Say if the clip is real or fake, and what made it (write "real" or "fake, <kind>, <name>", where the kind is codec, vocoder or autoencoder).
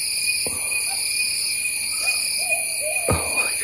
real